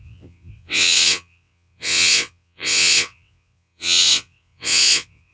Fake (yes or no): yes